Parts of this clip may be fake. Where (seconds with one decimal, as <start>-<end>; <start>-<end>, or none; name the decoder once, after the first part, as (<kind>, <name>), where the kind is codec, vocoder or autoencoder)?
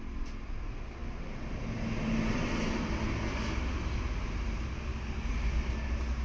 none